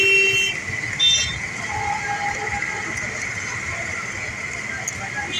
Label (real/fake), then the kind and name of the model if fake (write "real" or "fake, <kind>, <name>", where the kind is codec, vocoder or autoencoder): real